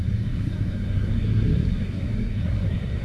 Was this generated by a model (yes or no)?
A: yes